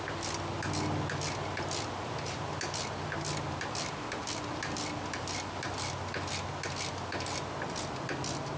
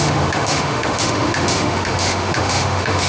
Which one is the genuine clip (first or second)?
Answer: first